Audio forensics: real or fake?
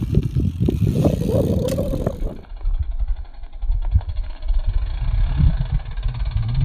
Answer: real